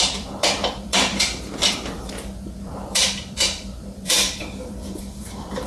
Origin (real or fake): fake